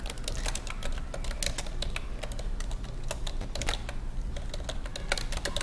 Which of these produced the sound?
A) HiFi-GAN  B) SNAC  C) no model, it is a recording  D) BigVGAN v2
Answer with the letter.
C